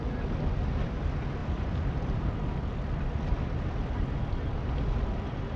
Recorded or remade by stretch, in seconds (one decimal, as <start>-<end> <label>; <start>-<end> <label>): 0.0-1.4 recorded; 1.4-2.3 remade; 2.3-5.6 recorded

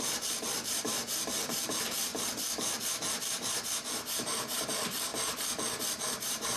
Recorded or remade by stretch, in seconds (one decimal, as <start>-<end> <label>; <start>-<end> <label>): 0.0-2.1 remade; 2.1-3.1 recorded; 3.1-5.1 remade; 5.1-5.8 recorded; 5.8-6.6 remade

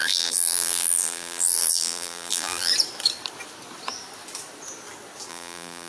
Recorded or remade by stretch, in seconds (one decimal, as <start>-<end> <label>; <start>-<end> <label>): 0.0-2.7 remade; 2.7-5.3 recorded; 5.3-5.9 remade

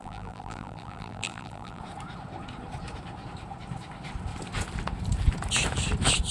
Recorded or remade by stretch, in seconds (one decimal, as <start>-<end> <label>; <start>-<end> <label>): 0.0-1.8 remade; 1.8-6.3 recorded

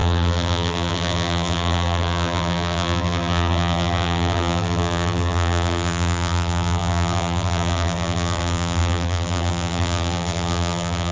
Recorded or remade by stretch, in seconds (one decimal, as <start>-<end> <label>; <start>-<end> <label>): 0.0-11.1 remade

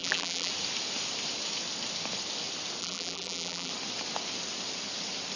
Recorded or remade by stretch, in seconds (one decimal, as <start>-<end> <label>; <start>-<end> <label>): 0.0-0.5 remade; 0.5-2.8 recorded; 2.8-3.7 remade; 3.7-5.4 recorded

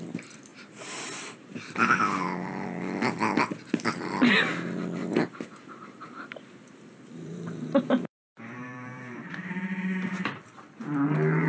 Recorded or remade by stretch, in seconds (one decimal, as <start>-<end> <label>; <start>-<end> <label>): 0.0-0.5 recorded; 0.5-2.0 remade; 2.0-5.0 recorded; 5.0-9.5 remade; 9.5-11.5 recorded

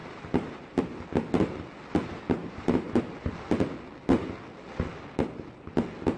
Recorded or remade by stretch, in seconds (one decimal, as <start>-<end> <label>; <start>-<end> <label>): 0.0-0.8 remade; 0.8-2.4 recorded; 2.4-3.0 remade; 3.0-6.2 recorded